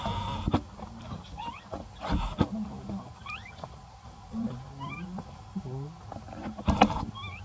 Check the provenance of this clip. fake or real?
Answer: real